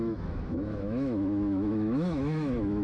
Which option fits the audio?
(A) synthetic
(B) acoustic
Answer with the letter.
A